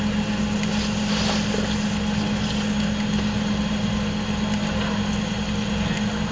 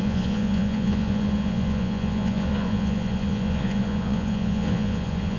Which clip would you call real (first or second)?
first